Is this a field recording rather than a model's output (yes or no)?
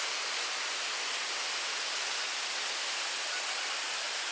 yes